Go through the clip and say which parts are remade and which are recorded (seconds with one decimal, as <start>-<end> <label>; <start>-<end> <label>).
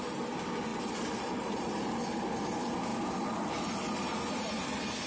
0.0-0.7 recorded; 0.7-1.9 remade; 1.9-5.1 recorded